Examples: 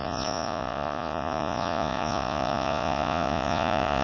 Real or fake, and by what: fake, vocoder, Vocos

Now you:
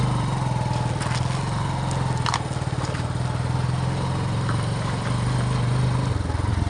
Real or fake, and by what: real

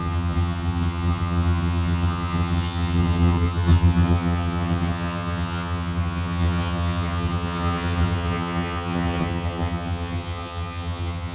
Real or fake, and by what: fake, vocoder, HiFi-GAN